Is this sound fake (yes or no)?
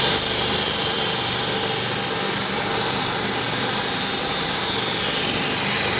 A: yes